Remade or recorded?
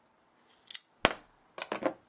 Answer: recorded